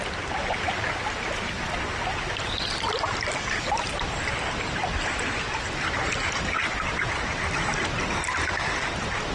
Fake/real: real